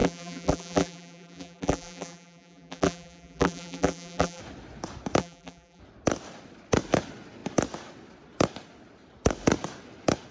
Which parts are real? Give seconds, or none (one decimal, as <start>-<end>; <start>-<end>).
4.4-5.2; 5.8-10.3